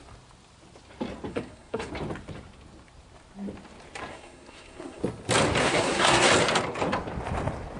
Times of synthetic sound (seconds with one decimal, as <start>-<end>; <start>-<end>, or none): 1.3-1.9; 4.1-5.0; 5.6-6.3